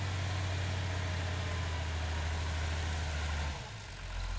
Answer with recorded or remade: recorded